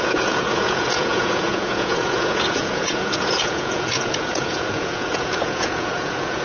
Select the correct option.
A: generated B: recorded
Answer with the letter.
A